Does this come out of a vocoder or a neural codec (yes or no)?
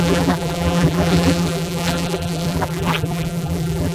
yes